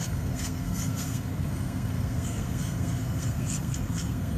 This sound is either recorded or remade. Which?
remade